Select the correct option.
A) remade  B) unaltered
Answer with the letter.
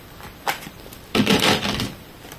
A